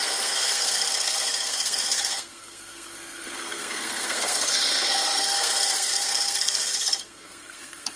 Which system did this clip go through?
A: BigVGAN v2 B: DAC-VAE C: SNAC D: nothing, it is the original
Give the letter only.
C